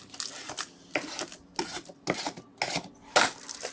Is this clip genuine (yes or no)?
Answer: yes